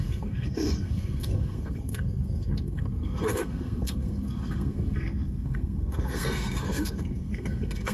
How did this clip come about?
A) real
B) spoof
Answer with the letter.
B